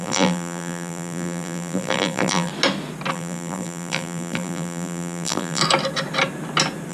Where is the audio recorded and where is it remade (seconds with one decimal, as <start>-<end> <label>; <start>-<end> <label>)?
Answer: 0.0-2.5 remade; 2.5-3.1 recorded; 3.1-5.6 remade; 5.6-6.9 recorded